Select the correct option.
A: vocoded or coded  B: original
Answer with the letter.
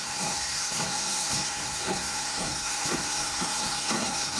A